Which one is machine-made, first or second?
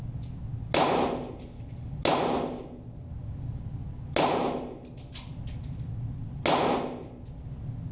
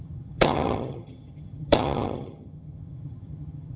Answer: second